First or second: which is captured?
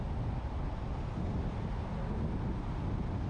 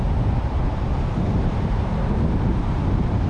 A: first